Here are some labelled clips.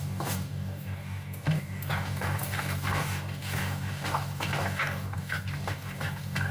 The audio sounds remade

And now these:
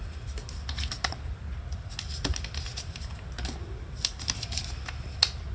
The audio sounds recorded